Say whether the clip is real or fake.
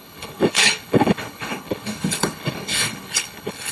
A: fake